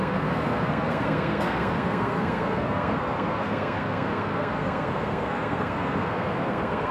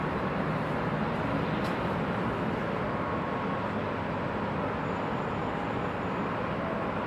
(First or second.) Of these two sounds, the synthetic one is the first